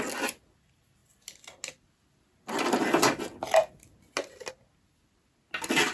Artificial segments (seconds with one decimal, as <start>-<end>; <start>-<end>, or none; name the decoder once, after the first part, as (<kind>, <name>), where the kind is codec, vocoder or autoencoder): none